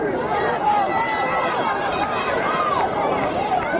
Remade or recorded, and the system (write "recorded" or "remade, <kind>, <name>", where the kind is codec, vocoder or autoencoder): remade, vocoder, BigVGAN v2